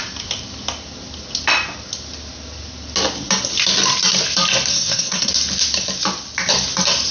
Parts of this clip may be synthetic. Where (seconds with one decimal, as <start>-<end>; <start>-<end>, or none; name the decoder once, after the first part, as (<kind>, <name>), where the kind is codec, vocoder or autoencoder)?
4.7-5.3 (codec, SNAC)